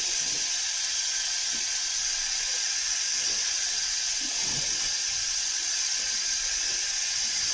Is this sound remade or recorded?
remade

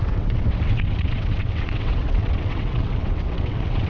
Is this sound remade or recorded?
remade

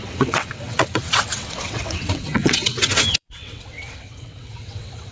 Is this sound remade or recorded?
remade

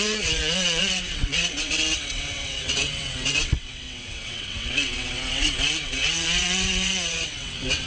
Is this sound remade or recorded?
remade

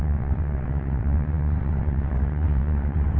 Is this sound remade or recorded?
remade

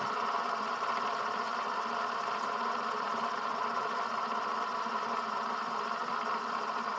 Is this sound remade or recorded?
recorded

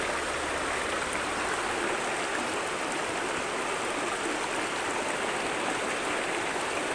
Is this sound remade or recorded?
recorded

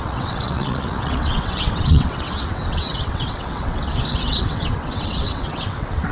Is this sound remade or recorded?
remade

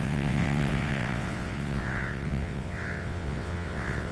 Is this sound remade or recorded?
remade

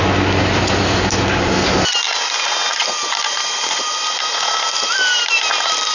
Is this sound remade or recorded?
recorded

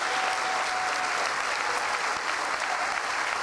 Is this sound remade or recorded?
recorded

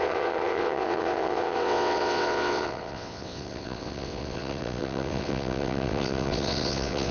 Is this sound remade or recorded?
remade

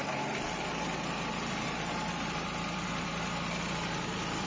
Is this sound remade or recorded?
recorded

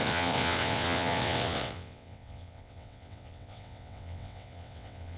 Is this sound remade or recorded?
remade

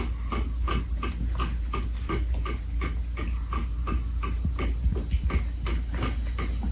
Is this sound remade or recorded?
recorded